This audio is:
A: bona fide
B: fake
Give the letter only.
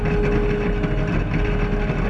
A